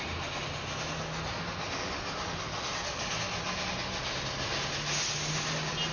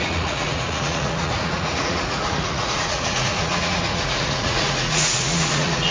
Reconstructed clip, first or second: second